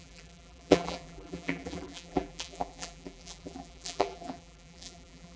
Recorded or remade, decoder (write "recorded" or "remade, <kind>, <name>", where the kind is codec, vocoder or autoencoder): remade, vocoder, BigVGAN v2